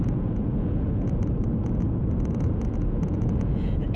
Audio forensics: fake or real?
fake